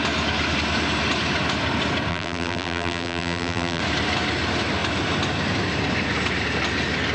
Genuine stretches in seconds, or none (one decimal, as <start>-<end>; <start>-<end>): 0.0-2.1; 3.8-7.1